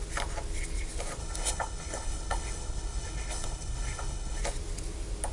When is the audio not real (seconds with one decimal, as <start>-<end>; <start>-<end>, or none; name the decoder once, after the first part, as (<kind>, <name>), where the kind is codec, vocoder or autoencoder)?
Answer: 1.2-4.4 (codec, HILCodec)